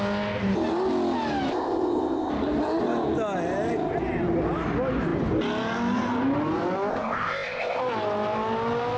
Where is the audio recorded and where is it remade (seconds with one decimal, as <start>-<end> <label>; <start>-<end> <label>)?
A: 0.0-1.5 recorded; 1.5-2.3 remade; 2.3-6.9 recorded; 6.9-7.8 remade; 7.8-9.0 recorded